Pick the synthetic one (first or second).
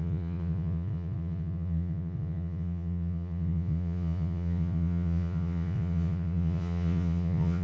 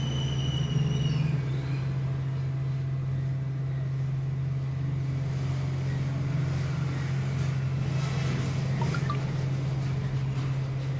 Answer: first